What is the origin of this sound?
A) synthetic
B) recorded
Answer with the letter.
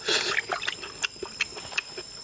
B